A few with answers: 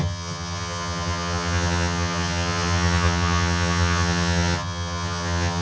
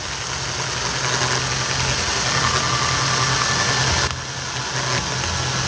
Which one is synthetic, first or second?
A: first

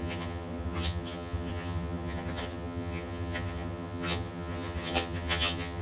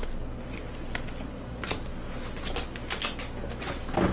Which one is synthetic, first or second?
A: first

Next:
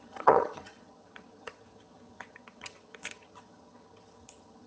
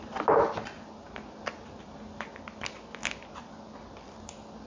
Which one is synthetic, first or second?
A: first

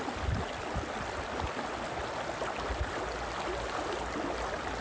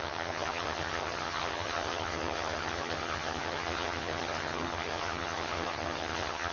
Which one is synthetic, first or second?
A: second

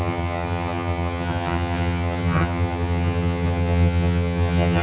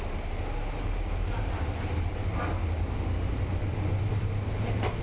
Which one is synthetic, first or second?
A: first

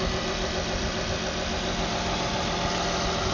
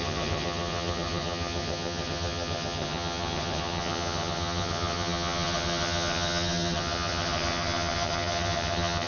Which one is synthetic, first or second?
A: second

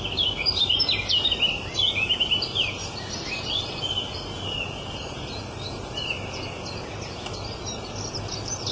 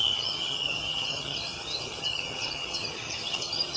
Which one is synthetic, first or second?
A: second